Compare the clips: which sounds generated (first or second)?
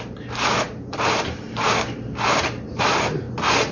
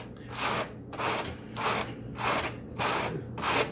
first